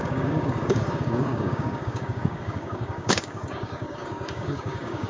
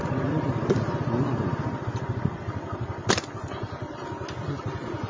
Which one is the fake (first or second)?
first